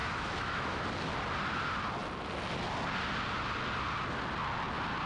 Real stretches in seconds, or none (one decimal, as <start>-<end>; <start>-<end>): 0.8-5.1

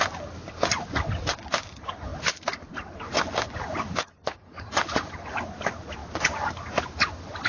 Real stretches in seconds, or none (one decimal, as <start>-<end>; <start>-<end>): 0.0-4.2; 5.1-7.5

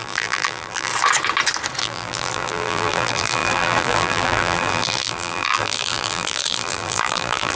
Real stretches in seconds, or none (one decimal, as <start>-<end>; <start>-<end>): 0.9-1.8